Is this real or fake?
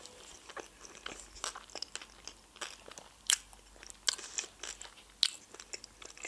real